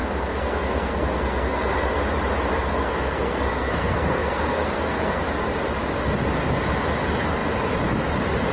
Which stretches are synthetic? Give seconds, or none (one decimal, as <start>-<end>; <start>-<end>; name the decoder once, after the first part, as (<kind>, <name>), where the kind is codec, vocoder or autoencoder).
0.0-2.0 (codec, SNAC); 2.5-5.2